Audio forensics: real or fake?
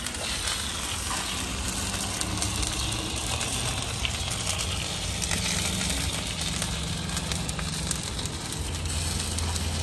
real